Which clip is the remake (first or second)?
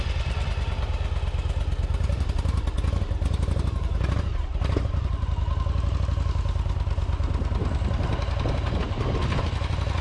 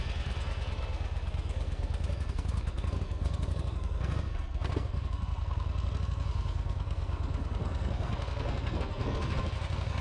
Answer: second